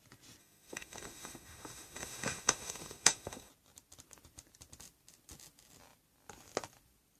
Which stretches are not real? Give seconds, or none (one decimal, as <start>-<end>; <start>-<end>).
0.4-3.5